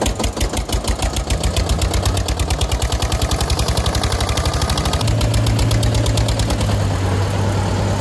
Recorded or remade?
recorded